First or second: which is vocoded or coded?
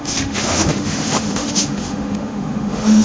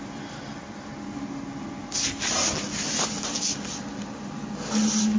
first